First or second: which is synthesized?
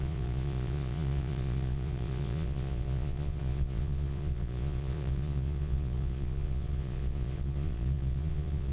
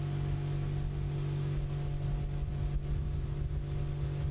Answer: first